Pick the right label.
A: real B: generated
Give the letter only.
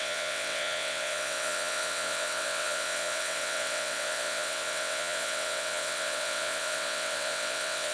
B